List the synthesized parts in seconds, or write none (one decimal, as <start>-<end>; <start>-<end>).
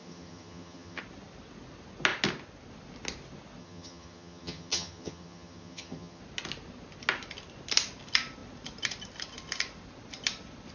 0.0-1.0; 3.6-6.2